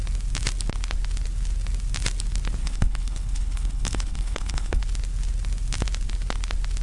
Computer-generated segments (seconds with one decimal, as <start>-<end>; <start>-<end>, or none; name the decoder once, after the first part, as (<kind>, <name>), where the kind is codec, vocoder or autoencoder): 2.6-4.8 (codec, HILCodec)